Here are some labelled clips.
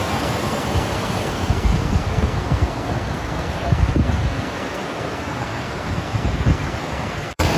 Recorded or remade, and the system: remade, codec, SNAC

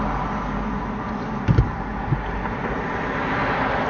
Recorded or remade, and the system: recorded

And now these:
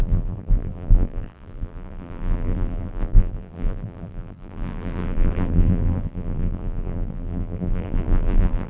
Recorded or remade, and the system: remade, vocoder, BigVGAN v2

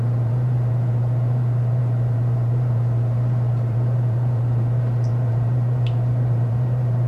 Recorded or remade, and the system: remade, vocoder, BigVGAN v2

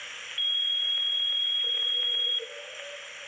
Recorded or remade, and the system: remade, vocoder, BigVGAN v2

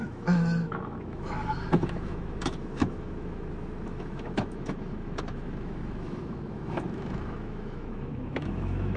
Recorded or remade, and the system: remade, autoencoder, DAC-VAE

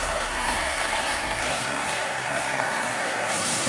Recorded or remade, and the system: remade, codec, SNAC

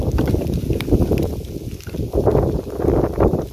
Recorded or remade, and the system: recorded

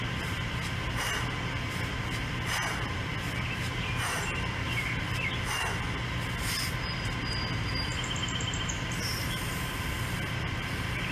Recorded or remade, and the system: recorded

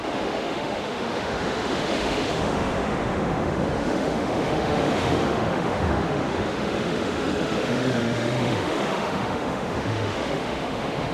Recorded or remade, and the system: remade, autoencoder, DAC-VAE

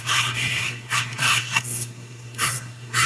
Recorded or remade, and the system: remade, codec, SNAC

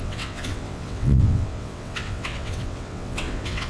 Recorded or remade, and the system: remade, vocoder, WaveNeXt